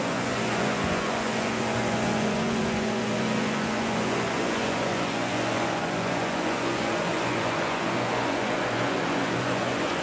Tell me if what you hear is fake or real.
fake